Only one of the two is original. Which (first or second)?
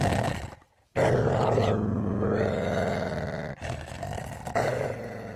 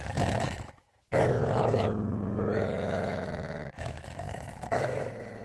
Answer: first